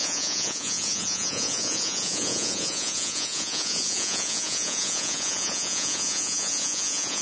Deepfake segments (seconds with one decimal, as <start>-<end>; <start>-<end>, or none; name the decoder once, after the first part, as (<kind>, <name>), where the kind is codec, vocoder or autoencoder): 0.0-7.2 (vocoder, Vocos)